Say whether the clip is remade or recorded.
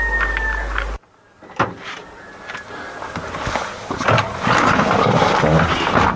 recorded